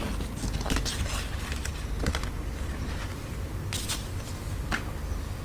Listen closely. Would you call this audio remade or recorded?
recorded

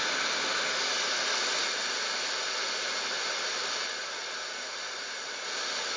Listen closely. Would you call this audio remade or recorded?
recorded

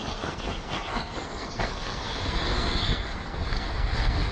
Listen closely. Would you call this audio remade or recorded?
remade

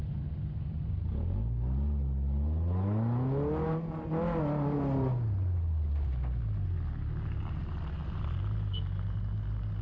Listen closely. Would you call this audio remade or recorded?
recorded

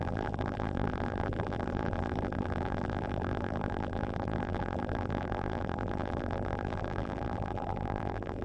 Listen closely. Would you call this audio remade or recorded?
remade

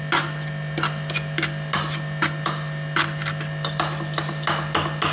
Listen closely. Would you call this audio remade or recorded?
recorded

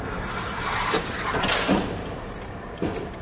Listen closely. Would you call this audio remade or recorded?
remade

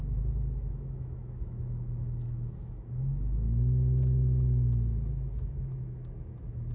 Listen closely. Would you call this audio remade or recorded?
remade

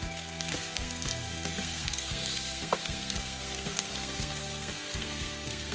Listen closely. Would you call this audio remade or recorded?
remade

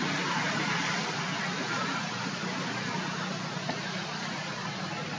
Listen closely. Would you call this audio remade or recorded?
recorded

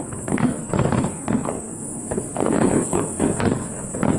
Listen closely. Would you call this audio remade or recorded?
remade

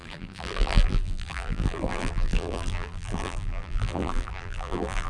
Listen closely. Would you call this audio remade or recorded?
remade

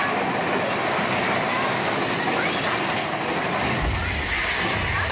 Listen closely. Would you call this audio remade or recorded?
recorded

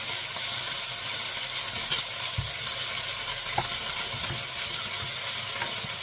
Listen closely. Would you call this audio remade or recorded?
recorded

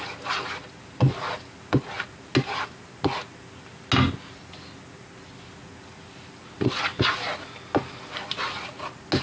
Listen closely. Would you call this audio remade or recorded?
recorded